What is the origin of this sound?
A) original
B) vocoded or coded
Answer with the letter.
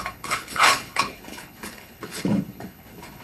B